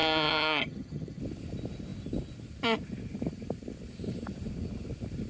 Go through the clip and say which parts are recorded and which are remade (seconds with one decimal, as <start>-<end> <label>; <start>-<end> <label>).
0.0-1.2 remade; 1.2-5.3 recorded

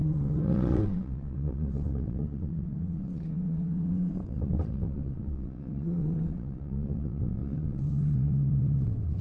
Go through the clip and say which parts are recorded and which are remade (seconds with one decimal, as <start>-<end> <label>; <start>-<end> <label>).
0.0-9.2 remade